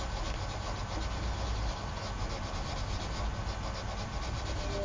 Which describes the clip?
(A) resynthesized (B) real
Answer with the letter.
B